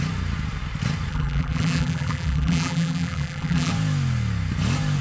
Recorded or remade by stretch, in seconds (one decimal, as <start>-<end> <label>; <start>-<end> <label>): 0.0-1.1 recorded; 1.1-3.7 remade; 3.7-5.0 recorded